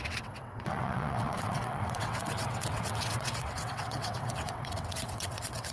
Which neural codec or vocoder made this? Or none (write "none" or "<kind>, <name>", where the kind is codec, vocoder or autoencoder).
vocoder, WaveNeXt